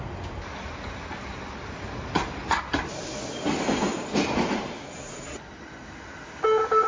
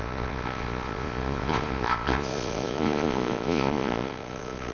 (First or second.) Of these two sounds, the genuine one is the first